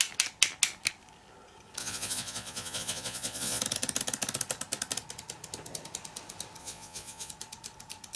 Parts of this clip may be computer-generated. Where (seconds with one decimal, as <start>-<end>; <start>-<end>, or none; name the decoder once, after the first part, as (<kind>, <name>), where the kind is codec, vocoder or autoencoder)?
1.8-3.6 (vocoder, Vocos); 6.6-7.3